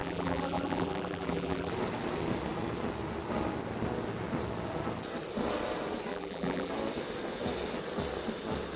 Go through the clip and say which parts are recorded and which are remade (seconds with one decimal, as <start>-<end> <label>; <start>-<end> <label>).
0.0-1.7 remade; 1.7-6.1 recorded; 6.1-6.7 remade; 6.7-8.8 recorded